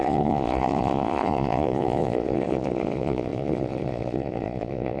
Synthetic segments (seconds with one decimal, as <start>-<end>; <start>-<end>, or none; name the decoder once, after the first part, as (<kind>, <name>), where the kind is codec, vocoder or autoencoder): 0.0-5.0 (vocoder, Vocos)